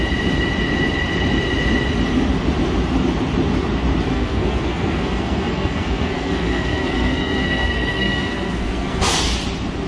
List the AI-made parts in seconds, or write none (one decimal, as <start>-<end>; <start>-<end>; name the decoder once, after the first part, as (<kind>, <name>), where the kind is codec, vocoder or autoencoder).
4.1-9.2 (codec, SNAC)